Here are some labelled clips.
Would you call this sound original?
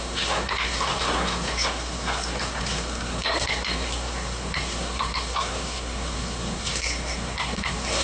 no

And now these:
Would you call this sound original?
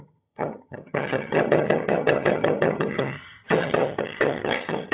no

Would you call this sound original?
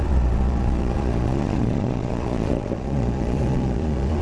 no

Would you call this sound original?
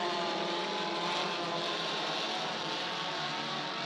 no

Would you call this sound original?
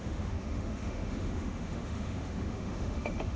no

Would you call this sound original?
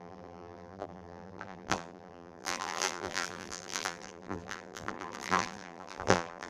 no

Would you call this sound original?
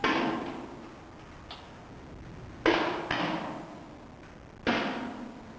yes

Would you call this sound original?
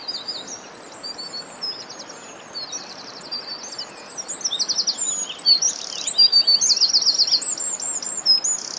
yes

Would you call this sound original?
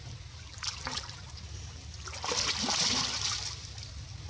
yes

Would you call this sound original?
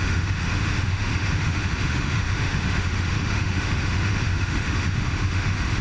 no